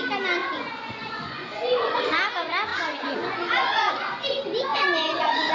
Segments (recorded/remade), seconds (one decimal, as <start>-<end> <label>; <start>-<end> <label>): 0.0-0.4 recorded; 0.4-2.0 remade; 2.0-2.7 recorded; 2.7-3.9 remade; 3.9-4.7 recorded; 4.7-5.5 remade